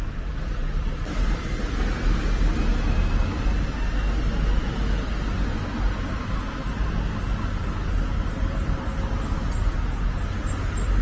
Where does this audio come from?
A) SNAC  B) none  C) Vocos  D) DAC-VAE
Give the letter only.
B